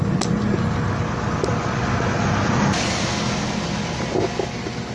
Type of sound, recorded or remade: recorded